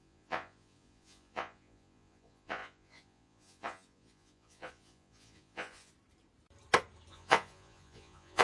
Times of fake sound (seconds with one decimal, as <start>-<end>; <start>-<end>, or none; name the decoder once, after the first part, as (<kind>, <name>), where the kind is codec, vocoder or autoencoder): 0.0-5.9 (vocoder, Vocos); 7.1-8.4

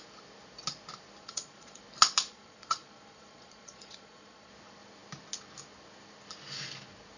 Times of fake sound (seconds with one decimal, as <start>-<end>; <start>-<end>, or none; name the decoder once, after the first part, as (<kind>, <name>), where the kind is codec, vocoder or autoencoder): 1.2-1.8 (vocoder, Vocos); 2.3-4.5

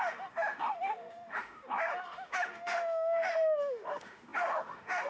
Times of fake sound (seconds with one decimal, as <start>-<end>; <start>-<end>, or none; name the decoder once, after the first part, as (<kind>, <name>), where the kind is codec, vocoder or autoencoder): 0.0-5.1 (autoencoder, DAC-VAE)

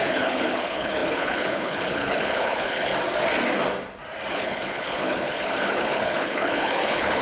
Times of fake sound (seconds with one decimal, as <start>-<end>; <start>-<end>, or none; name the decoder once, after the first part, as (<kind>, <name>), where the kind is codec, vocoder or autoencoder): 0.0-2.9 (codec, HILCodec); 4.3-7.2

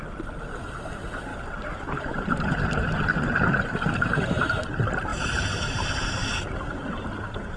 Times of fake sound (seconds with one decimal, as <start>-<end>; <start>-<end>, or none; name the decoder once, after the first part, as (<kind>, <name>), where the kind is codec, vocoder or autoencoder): 1.3-4.4 (vocoder, BigVGAN v2); 5.1-6.2

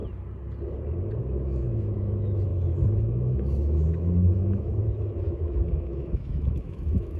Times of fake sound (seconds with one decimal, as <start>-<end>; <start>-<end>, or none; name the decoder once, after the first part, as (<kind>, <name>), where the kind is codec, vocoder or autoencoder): 1.2-7.2 (autoencoder, DAC-VAE)

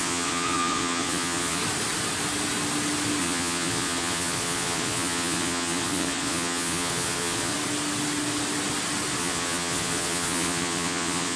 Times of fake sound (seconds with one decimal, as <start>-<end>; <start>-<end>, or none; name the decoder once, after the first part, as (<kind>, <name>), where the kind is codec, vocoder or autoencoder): 0.0-1.6 (vocoder, Vocos); 3.2-7.5; 9.2-11.4

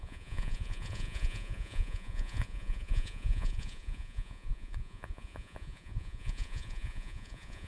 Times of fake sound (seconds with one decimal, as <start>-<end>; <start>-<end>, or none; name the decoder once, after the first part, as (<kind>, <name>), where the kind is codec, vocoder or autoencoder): 0.0-7.7 (vocoder, Vocos)